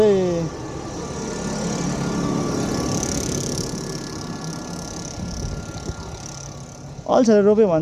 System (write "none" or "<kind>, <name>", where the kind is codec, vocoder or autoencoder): none